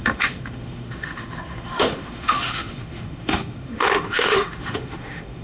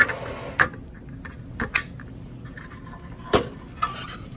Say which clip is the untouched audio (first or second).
second